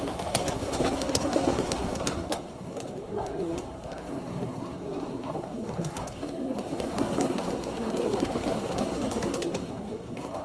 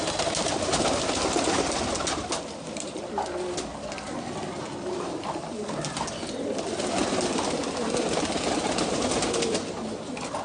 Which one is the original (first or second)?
second